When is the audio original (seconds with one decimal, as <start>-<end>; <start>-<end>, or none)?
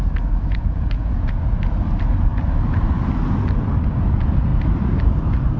0.0-0.5; 1.5-5.6